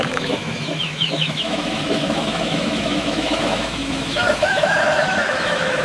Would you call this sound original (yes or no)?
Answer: no